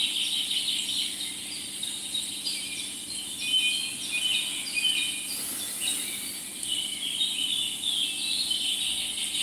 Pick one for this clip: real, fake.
real